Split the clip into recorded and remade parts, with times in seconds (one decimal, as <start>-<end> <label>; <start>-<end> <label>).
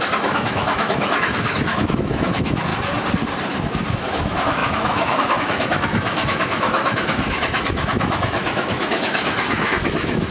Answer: 0.0-2.7 remade; 2.7-3.9 recorded; 3.9-10.3 remade